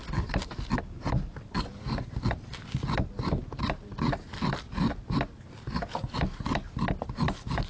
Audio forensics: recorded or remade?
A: recorded